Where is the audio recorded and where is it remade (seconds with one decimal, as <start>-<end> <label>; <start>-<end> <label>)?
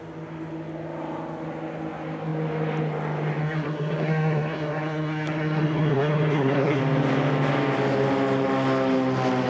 0.0-3.4 recorded; 3.4-6.8 remade; 6.8-9.5 recorded